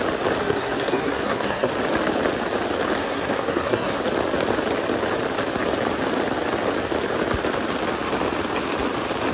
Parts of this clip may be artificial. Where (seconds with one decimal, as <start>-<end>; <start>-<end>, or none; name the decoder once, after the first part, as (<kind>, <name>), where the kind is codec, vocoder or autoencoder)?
0.4-1.7 (codec, SNAC); 3.0-4.0